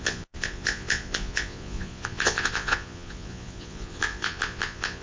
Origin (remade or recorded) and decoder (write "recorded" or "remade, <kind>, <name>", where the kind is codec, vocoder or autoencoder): remade, vocoder, Vocos